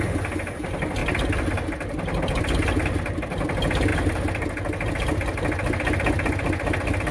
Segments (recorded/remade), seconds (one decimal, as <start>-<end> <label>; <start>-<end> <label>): 0.0-7.1 recorded